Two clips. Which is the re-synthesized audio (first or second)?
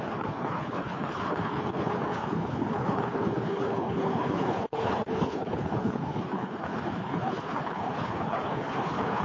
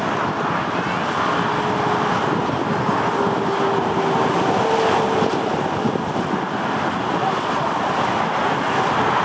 first